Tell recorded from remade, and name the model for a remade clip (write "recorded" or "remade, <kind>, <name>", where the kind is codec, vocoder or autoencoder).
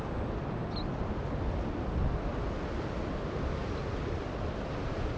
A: recorded